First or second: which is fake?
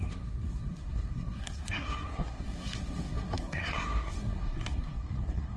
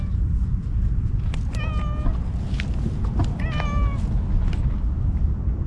first